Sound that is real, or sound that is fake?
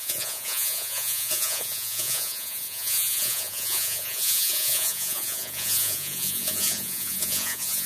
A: fake